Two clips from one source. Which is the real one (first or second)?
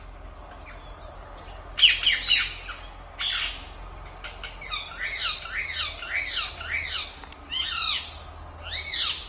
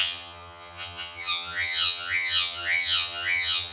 first